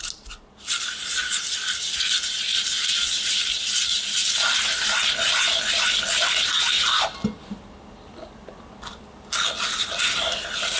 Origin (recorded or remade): recorded